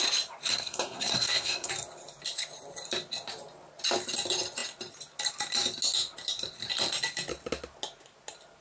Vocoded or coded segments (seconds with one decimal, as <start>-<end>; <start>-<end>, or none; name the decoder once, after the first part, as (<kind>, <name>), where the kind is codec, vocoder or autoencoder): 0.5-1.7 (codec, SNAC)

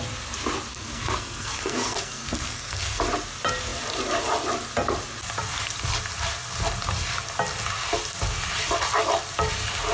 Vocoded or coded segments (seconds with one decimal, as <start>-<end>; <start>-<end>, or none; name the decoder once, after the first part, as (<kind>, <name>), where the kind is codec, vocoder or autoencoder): 0.7-3.0 (codec, SNAC)

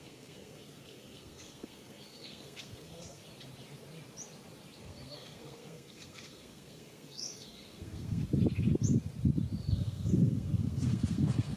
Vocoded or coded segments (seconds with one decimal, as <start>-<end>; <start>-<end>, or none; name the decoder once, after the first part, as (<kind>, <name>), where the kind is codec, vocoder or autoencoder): 0.0-3.2 (codec, SNAC); 4.8-8.2; 9.7-11.6

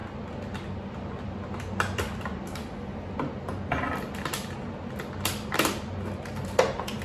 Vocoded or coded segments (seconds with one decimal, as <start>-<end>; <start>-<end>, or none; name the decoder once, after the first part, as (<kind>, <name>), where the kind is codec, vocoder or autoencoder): none

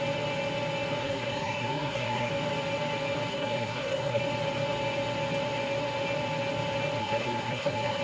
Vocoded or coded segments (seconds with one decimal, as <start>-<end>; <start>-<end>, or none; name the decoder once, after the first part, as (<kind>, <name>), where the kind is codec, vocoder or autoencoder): 1.0-2.3 (codec, SNAC); 3.3-4.2; 7.0-8.0